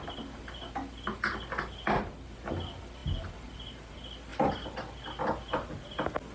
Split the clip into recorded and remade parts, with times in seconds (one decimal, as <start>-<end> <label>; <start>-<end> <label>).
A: 0.0-6.3 recorded